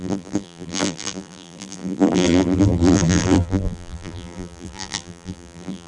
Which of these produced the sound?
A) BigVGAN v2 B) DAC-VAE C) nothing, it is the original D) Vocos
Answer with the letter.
A